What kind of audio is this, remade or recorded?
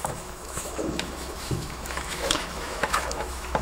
remade